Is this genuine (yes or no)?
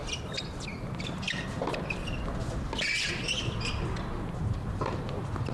yes